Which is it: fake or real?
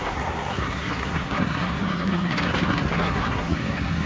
fake